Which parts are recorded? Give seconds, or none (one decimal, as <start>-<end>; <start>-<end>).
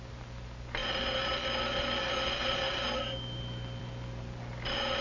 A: 0.0-5.0